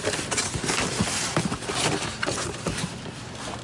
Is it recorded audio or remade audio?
recorded